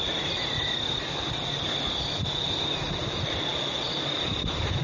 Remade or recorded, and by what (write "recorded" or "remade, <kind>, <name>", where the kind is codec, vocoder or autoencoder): recorded